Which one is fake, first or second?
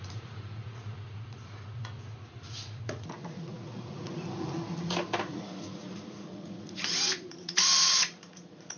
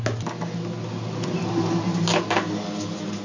first